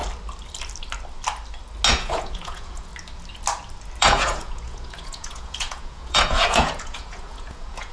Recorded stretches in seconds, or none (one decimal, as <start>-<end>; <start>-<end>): 0.0-1.9; 2.9-4.0